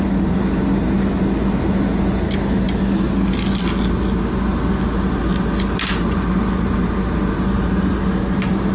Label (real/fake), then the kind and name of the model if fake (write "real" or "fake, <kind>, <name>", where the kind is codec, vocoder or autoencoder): real